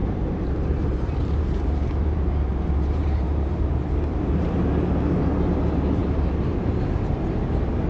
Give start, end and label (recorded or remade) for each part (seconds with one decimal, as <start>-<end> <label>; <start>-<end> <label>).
0.0-4.7 remade; 4.7-6.0 recorded; 6.0-6.8 remade; 6.8-7.9 recorded